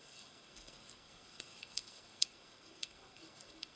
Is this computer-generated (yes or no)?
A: yes